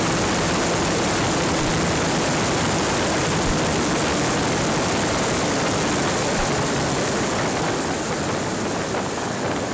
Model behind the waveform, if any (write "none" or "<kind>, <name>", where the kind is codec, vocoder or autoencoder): vocoder, BigVGAN v2